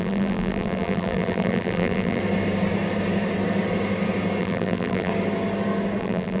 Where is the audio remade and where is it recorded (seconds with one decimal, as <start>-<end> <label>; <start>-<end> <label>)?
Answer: 0.0-2.2 remade; 2.2-4.4 recorded; 4.4-5.1 remade; 5.1-6.0 recorded; 6.0-6.4 remade

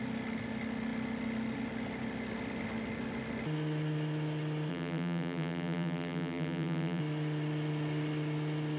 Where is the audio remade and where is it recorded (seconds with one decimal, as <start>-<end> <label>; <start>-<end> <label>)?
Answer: 0.0-4.7 recorded; 4.7-7.0 remade; 7.0-8.8 recorded

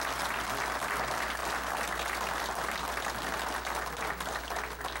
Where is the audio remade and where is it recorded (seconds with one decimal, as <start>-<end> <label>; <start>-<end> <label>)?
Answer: 0.0-5.0 recorded

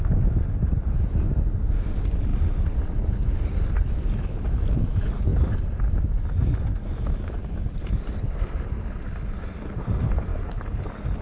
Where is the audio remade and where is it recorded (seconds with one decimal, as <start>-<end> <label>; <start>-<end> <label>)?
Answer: 0.0-11.2 recorded